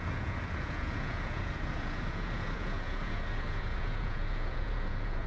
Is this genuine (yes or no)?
no